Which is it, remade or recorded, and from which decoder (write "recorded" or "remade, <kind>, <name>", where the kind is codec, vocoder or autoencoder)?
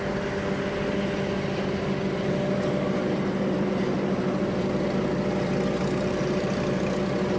recorded